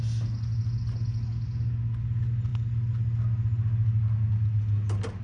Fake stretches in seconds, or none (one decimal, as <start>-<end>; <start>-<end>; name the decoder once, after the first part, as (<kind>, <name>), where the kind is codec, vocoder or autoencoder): none